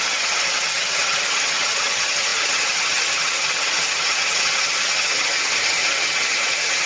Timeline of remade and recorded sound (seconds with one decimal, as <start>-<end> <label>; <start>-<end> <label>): 0.0-6.9 remade